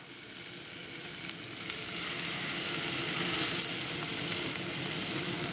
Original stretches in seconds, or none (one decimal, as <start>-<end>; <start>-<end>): 0.0-5.5